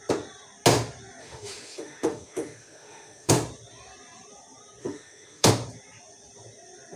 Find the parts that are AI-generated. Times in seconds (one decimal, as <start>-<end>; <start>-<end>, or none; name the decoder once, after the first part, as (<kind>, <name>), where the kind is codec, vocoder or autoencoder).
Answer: 1.2-3.3 (autoencoder, DAC-VAE); 4.8-5.5